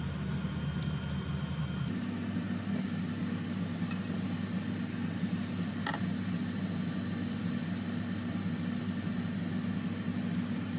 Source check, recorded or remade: recorded